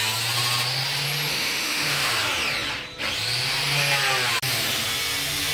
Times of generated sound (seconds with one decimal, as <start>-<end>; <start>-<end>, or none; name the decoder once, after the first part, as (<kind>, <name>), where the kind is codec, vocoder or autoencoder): 1.3-2.1 (autoencoder, DAC-VAE)